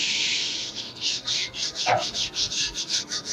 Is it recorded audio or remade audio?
remade